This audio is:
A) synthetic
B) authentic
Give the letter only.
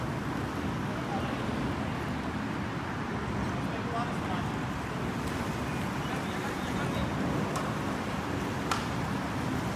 B